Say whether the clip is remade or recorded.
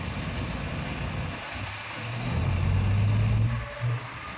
recorded